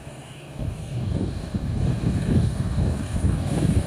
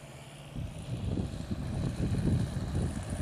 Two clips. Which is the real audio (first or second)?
second